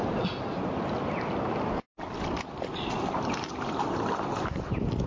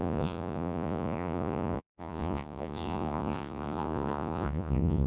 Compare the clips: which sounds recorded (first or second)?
first